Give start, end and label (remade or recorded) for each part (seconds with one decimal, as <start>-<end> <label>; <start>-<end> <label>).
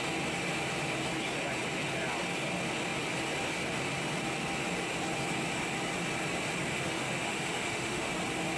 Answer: 0.0-6.7 recorded; 6.7-8.1 remade; 8.1-8.6 recorded